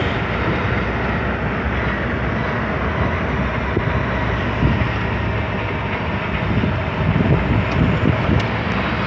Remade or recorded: recorded